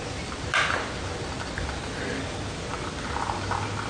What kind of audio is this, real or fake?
real